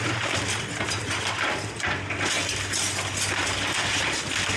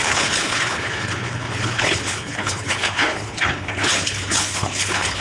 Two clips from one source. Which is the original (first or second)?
first